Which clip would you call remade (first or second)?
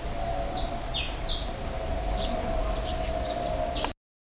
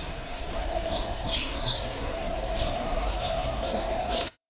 second